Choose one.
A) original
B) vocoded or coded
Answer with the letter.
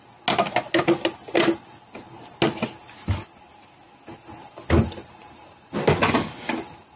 A